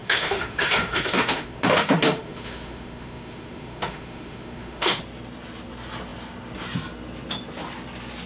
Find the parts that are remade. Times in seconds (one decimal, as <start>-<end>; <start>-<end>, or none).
0.0-5.0

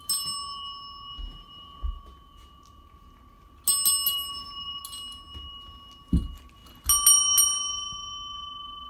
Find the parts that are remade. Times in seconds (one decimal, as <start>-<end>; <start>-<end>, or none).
4.3-4.8

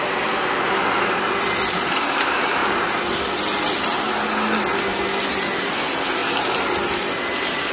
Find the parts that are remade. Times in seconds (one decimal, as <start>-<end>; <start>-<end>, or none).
0.0-2.6; 5.3-6.2

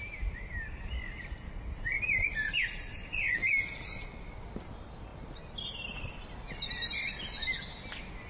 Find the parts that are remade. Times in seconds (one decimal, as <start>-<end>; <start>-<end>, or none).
none

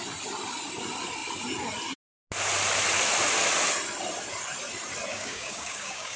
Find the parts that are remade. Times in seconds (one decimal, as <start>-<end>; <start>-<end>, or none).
5.1-6.2

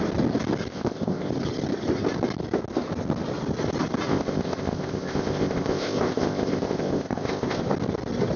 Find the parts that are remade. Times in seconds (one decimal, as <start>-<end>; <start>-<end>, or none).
0.7-1.3; 4.1-7.6

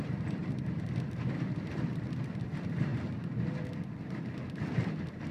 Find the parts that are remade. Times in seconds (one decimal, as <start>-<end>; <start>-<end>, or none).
0.0-2.9